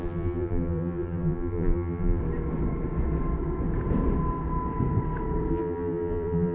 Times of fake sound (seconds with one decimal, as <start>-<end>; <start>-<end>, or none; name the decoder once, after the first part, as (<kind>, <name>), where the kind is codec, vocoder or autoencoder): 0.0-2.2 (vocoder, BigVGAN v2); 5.5-6.5